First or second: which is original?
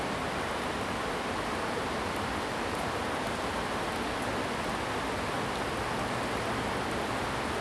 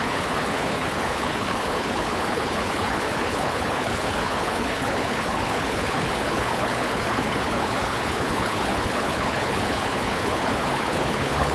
first